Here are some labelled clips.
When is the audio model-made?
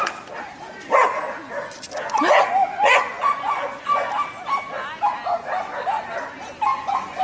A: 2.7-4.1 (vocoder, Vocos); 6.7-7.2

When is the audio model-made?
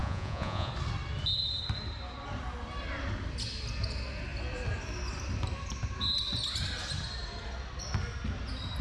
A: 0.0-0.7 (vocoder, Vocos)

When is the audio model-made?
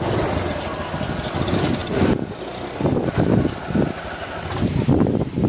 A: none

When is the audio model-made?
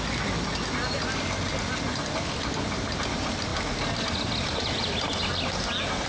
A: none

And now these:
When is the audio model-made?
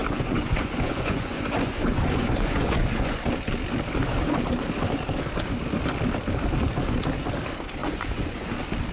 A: 0.0-3.2 (vocoder, Vocos); 7.8-8.5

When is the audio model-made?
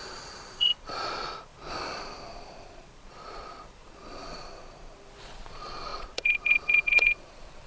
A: 0.0-1.5 (vocoder, Vocos); 2.4-4.5; 5.2-7.7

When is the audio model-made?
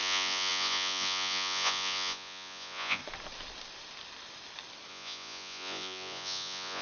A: 0.0-3.0 (vocoder, Vocos); 4.9-6.8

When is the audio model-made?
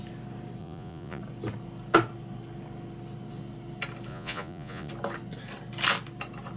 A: 0.6-1.2 (vocoder, Vocos); 4.1-4.9